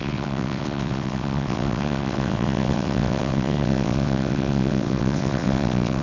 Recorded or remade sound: remade